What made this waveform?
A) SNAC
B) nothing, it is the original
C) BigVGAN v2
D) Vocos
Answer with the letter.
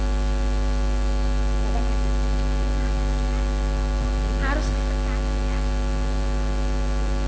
B